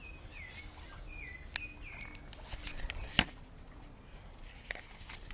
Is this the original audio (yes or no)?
yes